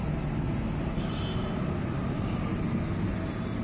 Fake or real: real